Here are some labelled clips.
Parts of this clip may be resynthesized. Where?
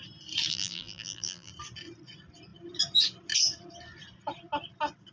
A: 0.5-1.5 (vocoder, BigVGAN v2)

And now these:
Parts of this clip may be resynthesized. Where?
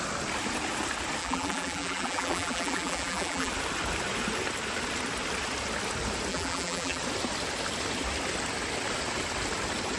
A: 1.2-3.5 (vocoder, BigVGAN v2); 6.3-7.0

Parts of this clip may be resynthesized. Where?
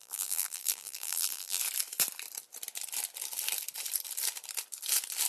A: 0.0-1.6 (vocoder, BigVGAN v2)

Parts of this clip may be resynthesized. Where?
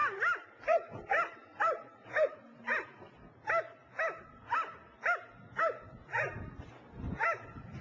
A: 0.0-1.6 (vocoder, BigVGAN v2)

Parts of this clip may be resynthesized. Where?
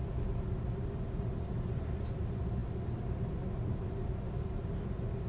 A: none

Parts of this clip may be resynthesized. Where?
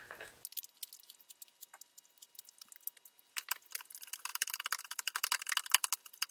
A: 4.3-5.5 (vocoder, BigVGAN v2)